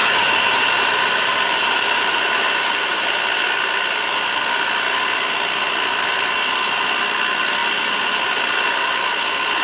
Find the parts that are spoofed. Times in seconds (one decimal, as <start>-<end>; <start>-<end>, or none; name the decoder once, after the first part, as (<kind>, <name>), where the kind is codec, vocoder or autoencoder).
0.0-3.1 (vocoder, BigVGAN v2)